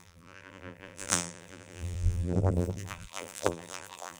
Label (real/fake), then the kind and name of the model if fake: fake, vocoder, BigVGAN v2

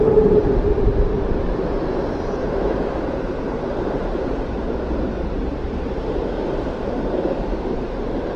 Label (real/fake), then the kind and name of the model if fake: fake, vocoder, BigVGAN v2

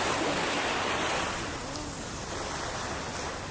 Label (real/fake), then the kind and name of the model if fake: real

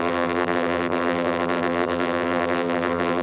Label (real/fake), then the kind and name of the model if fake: fake, vocoder, BigVGAN v2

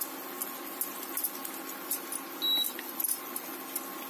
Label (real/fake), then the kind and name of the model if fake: real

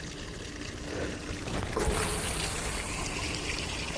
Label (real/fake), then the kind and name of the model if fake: real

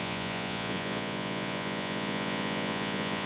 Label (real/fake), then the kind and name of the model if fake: fake, vocoder, Vocos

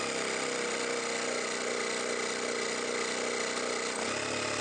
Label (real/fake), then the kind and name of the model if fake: real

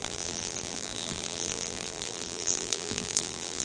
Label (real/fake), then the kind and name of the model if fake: fake, vocoder, BigVGAN v2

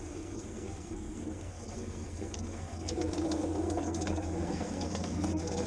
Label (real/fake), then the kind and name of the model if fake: fake, codec, SNAC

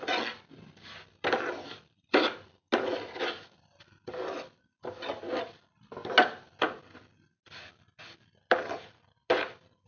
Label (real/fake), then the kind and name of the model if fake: real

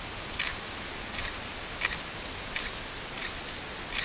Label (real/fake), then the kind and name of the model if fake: real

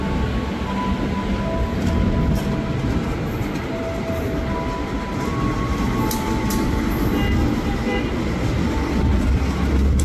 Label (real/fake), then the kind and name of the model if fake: real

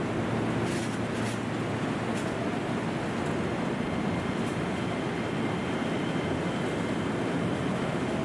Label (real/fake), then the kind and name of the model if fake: real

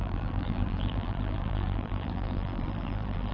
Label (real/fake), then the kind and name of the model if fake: fake, vocoder, BigVGAN v2